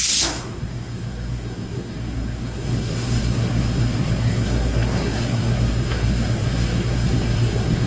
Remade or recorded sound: remade